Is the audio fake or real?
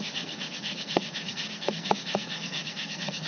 fake